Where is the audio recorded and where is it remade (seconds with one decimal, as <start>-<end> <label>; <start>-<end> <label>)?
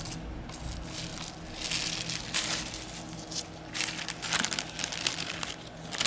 0.0-6.1 recorded